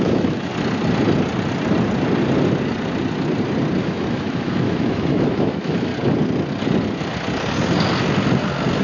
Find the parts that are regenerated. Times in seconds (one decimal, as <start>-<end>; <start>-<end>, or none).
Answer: 0.0-0.5; 3.8-5.9